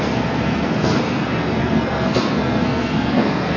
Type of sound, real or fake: fake